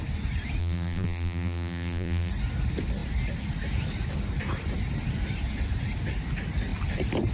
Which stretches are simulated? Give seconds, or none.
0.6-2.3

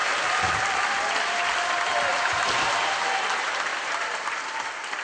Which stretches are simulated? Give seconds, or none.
2.1-2.7; 3.7-4.3